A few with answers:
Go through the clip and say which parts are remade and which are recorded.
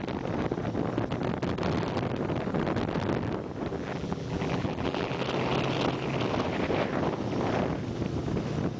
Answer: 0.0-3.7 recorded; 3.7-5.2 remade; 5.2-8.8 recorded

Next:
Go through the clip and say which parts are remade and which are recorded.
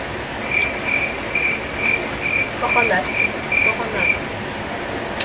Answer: 0.0-5.2 recorded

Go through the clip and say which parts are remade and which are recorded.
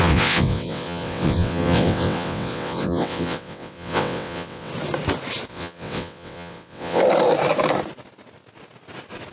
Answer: 0.0-4.7 remade; 4.7-5.5 recorded; 5.5-7.0 remade; 7.0-9.3 recorded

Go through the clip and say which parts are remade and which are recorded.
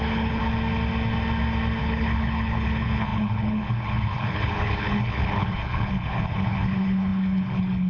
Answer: 0.0-0.4 remade; 0.4-1.8 recorded; 1.8-7.9 remade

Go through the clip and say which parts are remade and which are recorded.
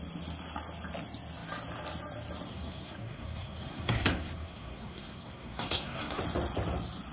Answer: 0.0-2.5 recorded; 2.5-6.2 remade; 6.2-7.1 recorded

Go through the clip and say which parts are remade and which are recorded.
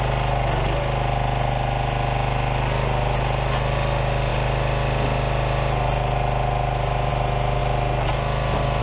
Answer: 0.0-8.8 recorded